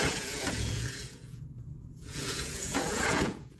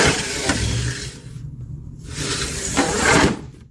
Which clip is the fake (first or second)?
first